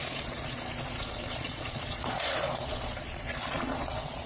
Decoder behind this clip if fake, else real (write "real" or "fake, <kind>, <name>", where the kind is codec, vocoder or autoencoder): fake, vocoder, Vocos